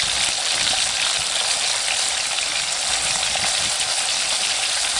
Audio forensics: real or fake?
real